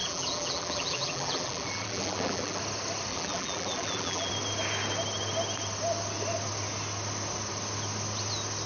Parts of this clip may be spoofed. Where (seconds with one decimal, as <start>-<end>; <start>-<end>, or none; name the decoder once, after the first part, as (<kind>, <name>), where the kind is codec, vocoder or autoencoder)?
0.0-2.6 (vocoder, BigVGAN v2); 3.1-4.3